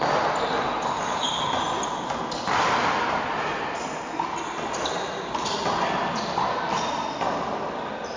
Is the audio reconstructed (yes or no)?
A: no